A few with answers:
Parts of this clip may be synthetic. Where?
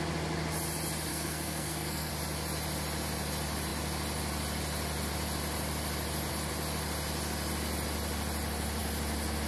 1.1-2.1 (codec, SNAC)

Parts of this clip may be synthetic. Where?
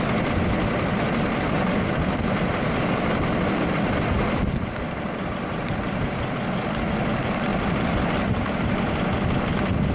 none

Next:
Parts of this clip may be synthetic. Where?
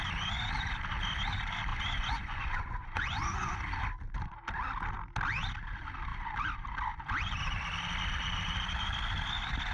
1.7-3.5 (vocoder, Vocos)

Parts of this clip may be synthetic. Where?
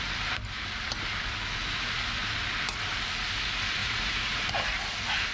3.8-4.6 (vocoder, Vocos)